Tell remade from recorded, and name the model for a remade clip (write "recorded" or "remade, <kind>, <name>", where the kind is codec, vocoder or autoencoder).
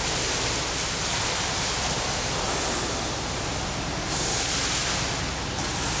recorded